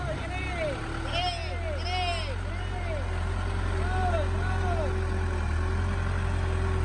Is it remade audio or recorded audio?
recorded